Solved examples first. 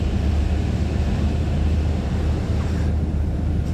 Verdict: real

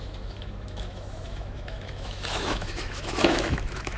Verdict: fake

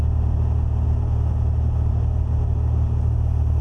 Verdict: real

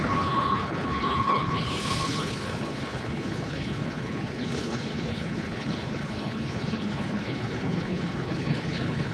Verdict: fake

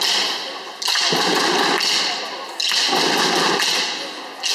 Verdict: real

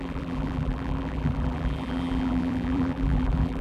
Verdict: fake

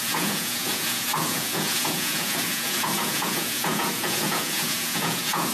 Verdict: fake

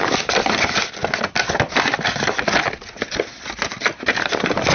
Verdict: real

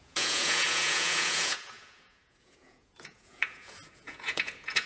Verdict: fake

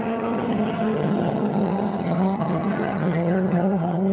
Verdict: fake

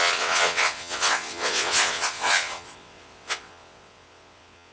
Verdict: fake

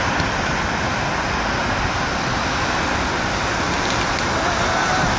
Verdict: real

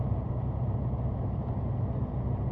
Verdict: real